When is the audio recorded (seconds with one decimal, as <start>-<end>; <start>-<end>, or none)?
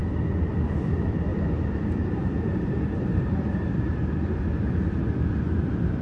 0.0-1.3; 4.9-6.0